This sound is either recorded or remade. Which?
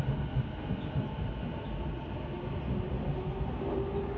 recorded